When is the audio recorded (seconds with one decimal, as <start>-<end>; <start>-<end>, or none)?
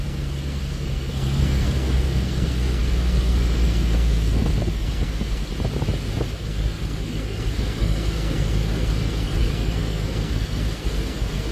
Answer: 5.5-6.4